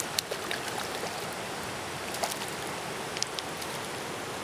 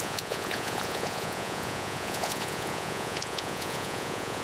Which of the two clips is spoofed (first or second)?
second